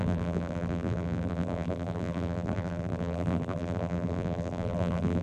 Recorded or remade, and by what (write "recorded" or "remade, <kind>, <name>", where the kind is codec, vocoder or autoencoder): remade, vocoder, BigVGAN v2